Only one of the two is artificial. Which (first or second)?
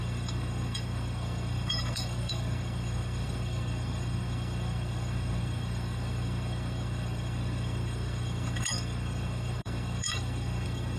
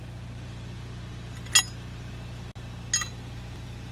first